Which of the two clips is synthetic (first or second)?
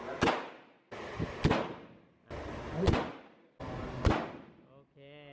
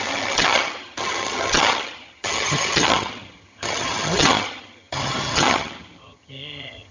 second